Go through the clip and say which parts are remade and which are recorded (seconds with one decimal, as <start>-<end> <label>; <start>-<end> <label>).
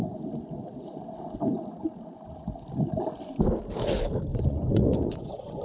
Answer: 0.0-4.3 recorded; 4.3-5.6 remade